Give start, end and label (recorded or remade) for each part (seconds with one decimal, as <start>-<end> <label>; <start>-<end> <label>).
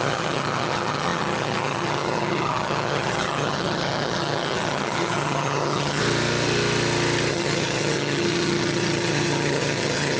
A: 0.0-6.0 remade; 6.0-7.3 recorded; 7.3-10.2 remade